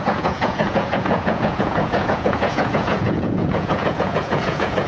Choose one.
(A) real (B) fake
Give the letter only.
B